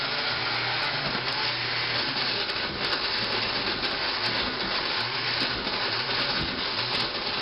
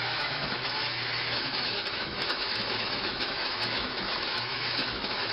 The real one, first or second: first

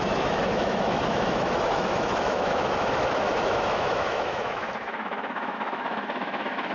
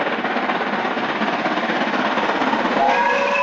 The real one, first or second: second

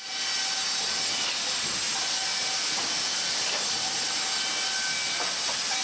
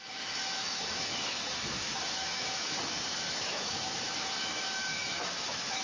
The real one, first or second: first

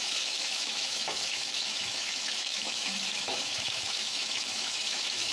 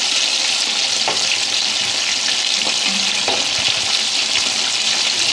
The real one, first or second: second